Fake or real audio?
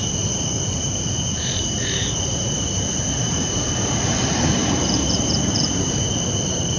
fake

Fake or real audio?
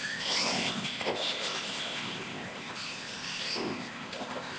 fake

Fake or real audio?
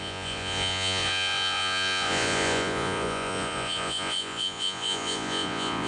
fake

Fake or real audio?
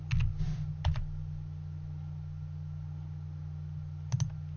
real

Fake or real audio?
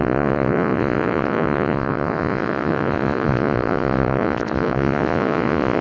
fake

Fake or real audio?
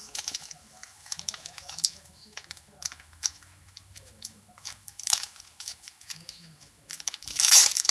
fake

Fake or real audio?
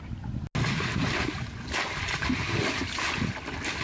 real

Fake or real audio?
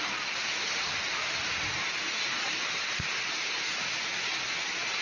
real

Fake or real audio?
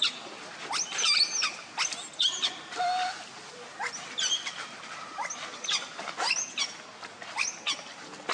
real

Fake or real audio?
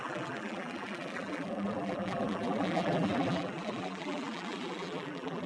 fake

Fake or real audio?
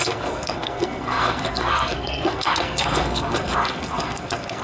fake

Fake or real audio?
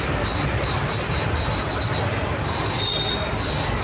real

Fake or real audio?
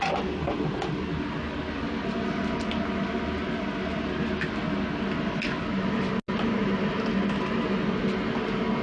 real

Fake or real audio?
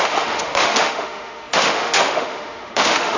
fake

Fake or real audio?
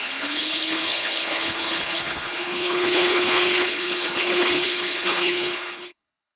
fake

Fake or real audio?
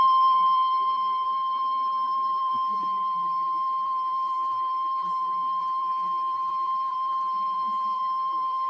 fake